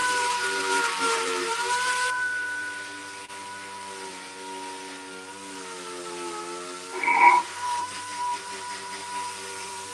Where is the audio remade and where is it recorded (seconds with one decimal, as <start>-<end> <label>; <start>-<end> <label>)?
0.0-3.0 remade; 3.0-7.3 recorded; 7.3-9.9 remade